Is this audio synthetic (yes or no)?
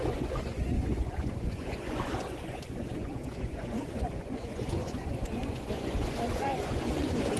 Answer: yes